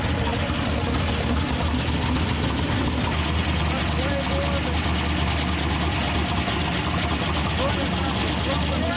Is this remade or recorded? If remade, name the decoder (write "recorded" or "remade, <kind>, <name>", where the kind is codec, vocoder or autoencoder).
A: recorded